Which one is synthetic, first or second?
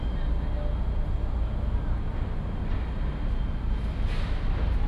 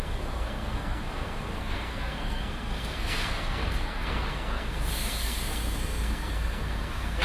second